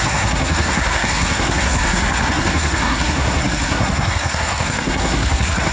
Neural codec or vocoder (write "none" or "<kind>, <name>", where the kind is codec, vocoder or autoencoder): codec, SNAC